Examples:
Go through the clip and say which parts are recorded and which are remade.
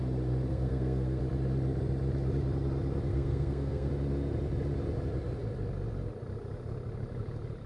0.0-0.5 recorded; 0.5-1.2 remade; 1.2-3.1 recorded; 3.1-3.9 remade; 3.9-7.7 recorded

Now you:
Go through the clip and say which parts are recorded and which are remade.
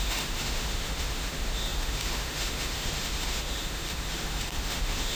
0.0-5.1 remade